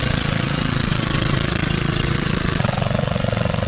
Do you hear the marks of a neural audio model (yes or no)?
yes